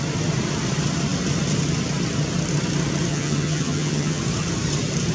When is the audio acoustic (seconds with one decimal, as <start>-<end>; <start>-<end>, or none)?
0.0-3.1; 4.2-5.1